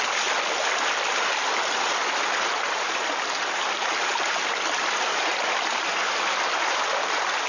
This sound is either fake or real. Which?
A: real